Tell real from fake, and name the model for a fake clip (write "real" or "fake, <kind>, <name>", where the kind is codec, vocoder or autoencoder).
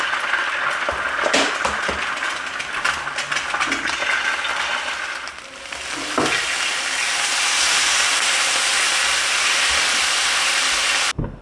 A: real